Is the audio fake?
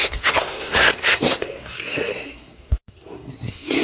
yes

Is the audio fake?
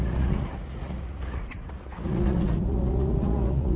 yes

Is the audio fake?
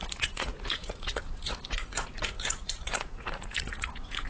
yes